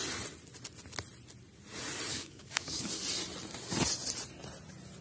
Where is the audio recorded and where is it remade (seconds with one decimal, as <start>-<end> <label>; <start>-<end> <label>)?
0.0-2.1 recorded; 2.1-2.9 remade; 2.9-5.0 recorded